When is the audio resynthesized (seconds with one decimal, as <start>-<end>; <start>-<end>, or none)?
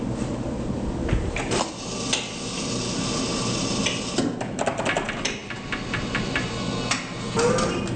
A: none